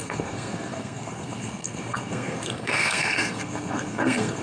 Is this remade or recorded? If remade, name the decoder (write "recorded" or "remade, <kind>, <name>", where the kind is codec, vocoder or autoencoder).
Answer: remade, codec, SNAC